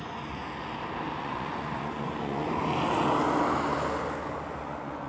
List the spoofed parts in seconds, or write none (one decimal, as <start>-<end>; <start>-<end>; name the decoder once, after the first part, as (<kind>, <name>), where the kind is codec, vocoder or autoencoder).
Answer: 0.0-0.4 (vocoder, Vocos); 1.2-2.6; 4.6-5.1